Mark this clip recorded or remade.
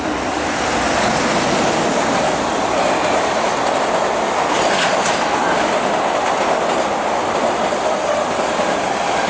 recorded